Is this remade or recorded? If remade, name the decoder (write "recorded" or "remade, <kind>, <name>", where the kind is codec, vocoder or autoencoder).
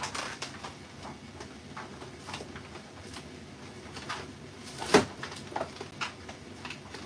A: recorded